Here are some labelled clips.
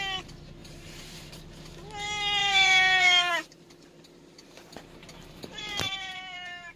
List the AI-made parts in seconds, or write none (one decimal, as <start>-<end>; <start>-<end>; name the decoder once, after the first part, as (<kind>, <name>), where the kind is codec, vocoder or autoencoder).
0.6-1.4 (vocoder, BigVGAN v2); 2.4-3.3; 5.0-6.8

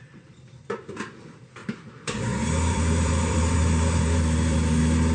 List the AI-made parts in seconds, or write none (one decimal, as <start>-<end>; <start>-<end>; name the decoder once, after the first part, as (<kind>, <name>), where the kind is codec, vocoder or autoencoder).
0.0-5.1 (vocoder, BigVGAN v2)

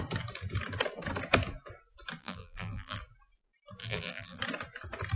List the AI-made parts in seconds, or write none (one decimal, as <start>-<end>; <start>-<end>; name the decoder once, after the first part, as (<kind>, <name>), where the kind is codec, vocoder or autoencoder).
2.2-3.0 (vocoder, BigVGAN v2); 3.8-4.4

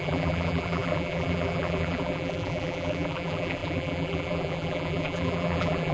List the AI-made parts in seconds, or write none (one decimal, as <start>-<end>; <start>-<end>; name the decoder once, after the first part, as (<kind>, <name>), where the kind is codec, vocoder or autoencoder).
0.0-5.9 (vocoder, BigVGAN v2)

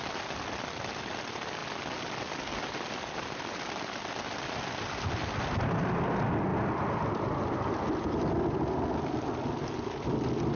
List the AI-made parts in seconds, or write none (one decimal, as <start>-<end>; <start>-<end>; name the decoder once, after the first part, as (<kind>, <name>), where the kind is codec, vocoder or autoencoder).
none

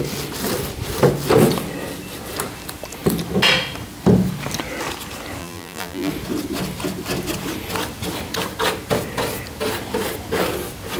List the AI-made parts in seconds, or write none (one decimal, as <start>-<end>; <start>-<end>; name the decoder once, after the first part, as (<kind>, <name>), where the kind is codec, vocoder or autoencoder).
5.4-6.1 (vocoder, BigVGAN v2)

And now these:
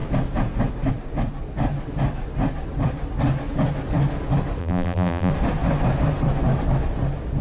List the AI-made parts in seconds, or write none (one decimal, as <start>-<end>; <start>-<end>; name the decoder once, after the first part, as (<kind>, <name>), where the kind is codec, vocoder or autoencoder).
4.6-5.3 (vocoder, BigVGAN v2)